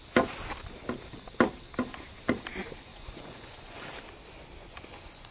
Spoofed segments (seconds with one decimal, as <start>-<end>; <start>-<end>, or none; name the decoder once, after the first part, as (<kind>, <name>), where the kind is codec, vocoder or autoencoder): 2.9-3.9 (vocoder, Vocos); 4.6-5.3